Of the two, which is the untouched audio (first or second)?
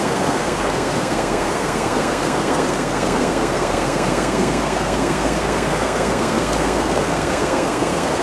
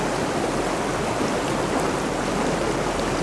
second